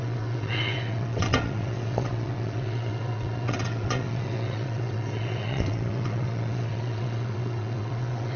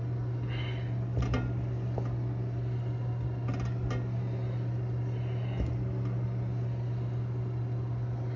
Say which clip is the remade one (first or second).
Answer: first